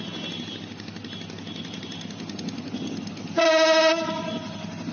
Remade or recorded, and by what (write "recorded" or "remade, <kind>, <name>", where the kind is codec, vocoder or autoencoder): recorded